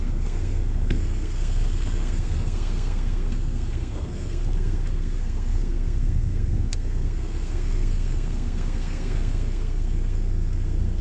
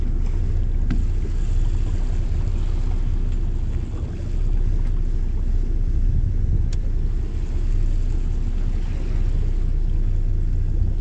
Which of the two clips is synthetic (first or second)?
first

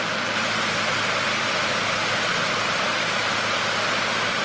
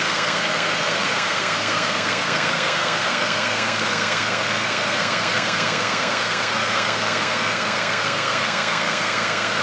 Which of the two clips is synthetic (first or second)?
second